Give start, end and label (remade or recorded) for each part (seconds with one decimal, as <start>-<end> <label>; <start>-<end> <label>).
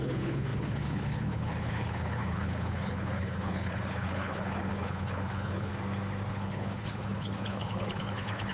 0.0-5.7 remade; 5.7-6.3 recorded; 6.3-8.5 remade